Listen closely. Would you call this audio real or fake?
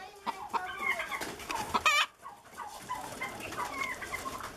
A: real